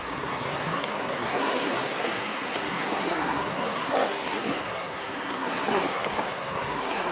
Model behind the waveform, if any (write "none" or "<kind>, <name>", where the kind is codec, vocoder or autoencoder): codec, SNAC